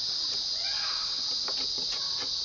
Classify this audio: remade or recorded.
recorded